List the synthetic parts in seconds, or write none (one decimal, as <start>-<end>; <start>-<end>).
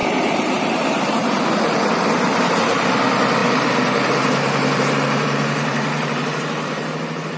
0.0-1.0; 3.4-7.4